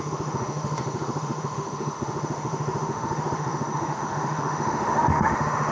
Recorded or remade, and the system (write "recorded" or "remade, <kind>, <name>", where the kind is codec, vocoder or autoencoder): remade, autoencoder, DAC-VAE